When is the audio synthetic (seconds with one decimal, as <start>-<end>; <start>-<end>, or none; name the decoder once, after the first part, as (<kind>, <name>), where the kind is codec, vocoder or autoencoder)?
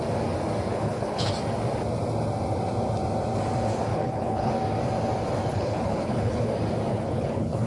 0.7-1.3 (codec, HILCodec); 3.9-4.5; 5.5-6.5; 6.9-7.7